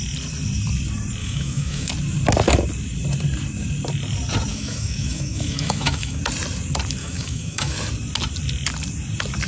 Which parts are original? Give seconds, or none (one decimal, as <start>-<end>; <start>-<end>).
0.0-1.2; 1.9-4.5; 6.2-7.0; 7.8-9.5